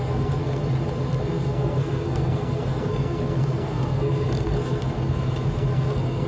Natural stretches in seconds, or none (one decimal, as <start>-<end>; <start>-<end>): 0.6-1.1